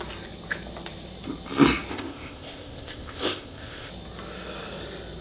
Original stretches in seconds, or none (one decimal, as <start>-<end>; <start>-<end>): 0.0-1.9; 3.9-5.2